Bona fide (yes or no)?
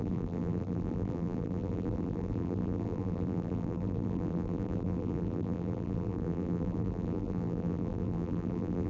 no